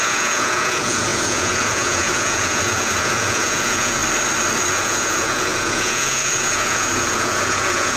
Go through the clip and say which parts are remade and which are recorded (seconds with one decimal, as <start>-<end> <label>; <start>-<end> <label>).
0.0-4.0 remade; 4.0-4.7 recorded; 4.7-8.0 remade